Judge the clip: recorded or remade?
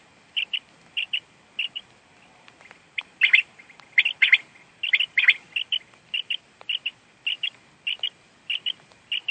recorded